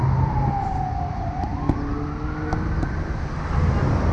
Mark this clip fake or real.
real